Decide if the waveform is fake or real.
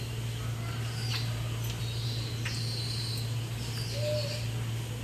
real